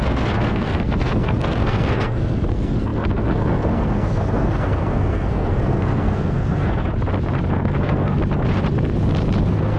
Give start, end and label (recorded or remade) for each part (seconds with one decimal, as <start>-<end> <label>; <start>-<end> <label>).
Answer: 0.0-6.9 remade; 6.9-7.5 recorded; 7.5-8.2 remade; 8.2-9.4 recorded; 9.4-9.8 remade